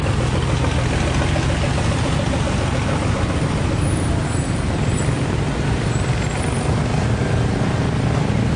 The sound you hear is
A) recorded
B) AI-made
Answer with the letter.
A